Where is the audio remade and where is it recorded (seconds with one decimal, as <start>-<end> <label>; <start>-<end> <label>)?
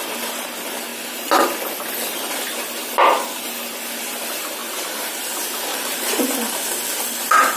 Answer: 0.0-4.6 recorded; 4.6-5.2 remade; 5.2-5.7 recorded; 5.7-6.2 remade; 6.2-7.6 recorded